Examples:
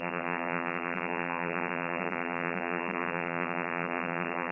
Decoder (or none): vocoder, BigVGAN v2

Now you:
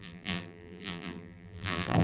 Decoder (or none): vocoder, BigVGAN v2